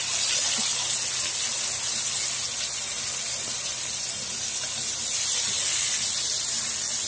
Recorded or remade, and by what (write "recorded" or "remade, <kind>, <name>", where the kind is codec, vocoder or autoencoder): recorded